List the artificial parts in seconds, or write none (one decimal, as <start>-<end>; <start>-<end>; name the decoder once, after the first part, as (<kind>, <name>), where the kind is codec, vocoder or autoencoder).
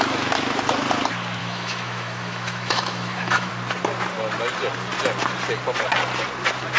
1.4-3.5 (autoencoder, DAC-VAE)